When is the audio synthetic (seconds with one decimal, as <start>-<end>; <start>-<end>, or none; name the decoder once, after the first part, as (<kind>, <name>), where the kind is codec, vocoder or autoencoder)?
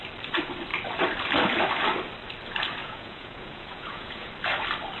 2.8-4.3 (vocoder, Vocos)